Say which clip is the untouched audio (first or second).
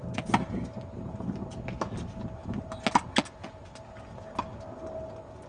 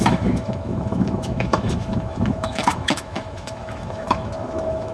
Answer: first